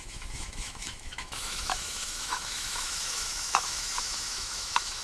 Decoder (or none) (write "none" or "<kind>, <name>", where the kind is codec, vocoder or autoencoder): autoencoder, DAC-VAE